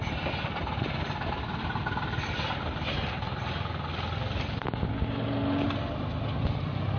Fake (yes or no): no